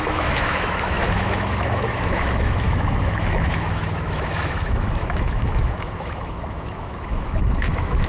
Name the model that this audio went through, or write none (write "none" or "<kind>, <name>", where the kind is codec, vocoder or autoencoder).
autoencoder, DAC-VAE